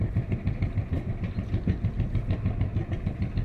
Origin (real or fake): real